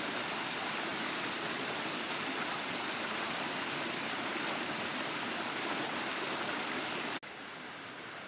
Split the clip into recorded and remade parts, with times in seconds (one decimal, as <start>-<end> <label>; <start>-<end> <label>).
0.0-8.3 recorded